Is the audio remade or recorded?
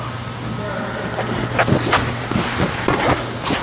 recorded